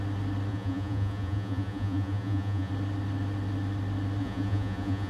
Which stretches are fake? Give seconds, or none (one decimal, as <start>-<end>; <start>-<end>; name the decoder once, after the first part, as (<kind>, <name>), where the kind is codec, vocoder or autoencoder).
0.5-2.7 (vocoder, Vocos); 4.2-5.1